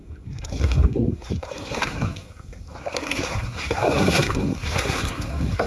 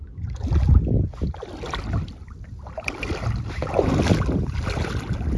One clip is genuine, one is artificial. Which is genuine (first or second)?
second